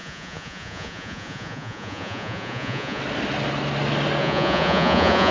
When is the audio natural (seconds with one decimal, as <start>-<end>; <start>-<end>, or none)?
3.0-4.2